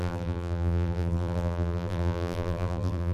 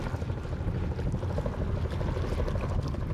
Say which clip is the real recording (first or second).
second